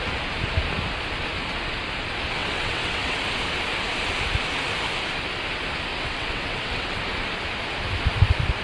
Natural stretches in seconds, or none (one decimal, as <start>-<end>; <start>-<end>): 0.0-2.4; 3.2-5.9; 7.0-8.6